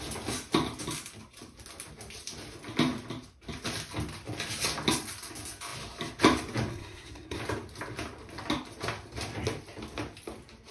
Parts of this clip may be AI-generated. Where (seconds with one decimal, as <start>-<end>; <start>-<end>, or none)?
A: 6.7-7.4